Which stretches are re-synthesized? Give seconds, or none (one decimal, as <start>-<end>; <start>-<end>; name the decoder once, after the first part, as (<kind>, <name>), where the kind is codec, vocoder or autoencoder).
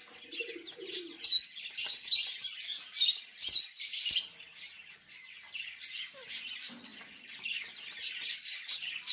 none